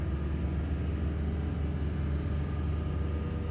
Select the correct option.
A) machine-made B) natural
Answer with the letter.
B